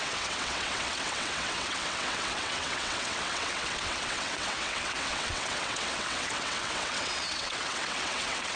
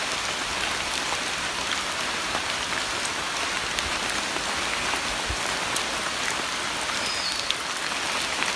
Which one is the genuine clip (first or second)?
second